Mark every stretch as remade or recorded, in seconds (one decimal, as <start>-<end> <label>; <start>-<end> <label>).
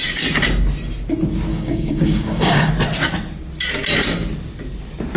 0.0-1.5 recorded; 1.5-2.7 remade; 2.7-5.2 recorded